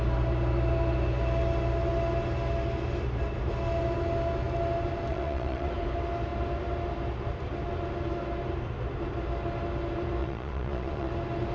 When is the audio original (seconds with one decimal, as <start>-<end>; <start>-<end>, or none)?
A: 0.0-5.1; 5.7-10.2; 11.1-11.5